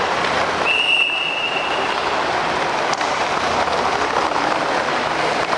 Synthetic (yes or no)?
yes